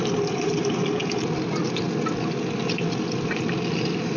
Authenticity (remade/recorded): recorded